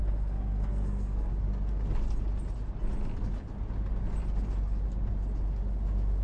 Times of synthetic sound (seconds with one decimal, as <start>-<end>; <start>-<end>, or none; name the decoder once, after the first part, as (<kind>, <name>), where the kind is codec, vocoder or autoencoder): 0.0-1.3 (codec, SNAC)